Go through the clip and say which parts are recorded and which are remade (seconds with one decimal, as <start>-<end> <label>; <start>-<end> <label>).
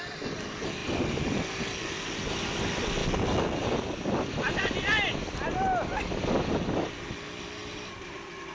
0.0-8.5 recorded